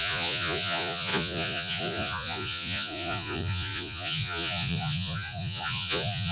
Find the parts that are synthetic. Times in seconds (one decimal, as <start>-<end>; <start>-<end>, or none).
0.0-6.3

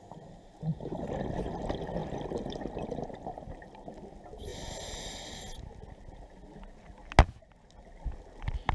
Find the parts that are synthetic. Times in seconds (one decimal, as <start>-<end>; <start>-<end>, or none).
none

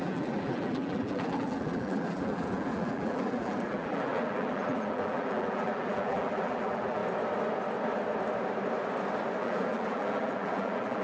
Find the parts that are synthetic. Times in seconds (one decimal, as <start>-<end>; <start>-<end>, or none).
0.0-7.0; 9.4-11.0